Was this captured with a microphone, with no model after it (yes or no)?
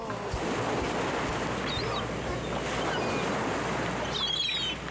yes